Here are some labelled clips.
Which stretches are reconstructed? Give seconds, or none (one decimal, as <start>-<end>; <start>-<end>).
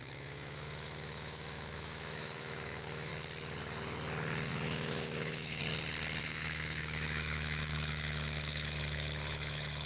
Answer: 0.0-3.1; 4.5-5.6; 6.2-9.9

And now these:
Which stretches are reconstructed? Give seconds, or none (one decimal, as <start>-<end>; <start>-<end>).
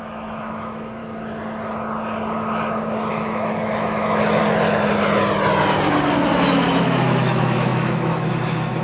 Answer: 0.0-1.0; 3.1-4.4; 6.8-8.8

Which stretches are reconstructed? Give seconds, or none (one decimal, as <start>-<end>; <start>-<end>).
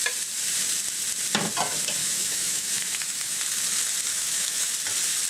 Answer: 2.0-3.4; 4.1-4.7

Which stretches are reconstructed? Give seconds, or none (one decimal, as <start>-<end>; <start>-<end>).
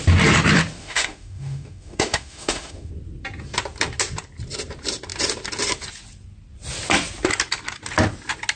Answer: 0.8-2.9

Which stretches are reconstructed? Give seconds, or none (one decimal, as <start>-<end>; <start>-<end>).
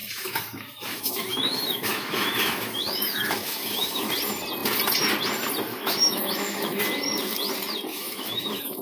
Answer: 0.0-4.1; 5.7-6.8; 7.9-8.8